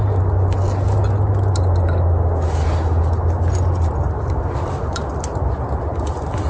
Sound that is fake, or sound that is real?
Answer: real